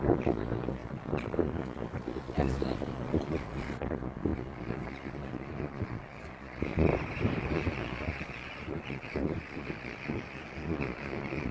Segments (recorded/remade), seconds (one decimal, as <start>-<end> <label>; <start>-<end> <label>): 0.0-6.9 remade; 6.9-7.4 recorded; 7.4-11.5 remade